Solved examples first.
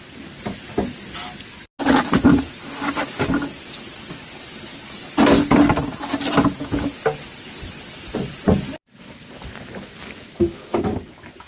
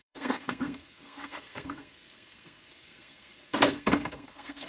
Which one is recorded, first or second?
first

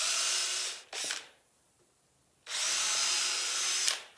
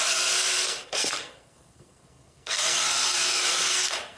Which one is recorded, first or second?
first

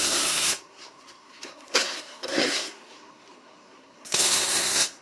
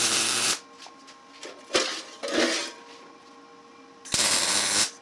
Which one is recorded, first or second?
second